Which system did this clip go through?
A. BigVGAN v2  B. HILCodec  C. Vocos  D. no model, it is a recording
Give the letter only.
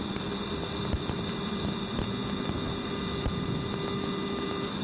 D